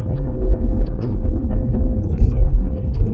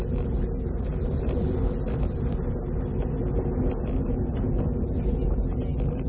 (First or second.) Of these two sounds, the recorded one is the second